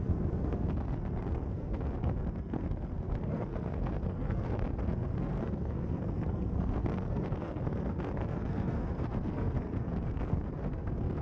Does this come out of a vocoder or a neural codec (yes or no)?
yes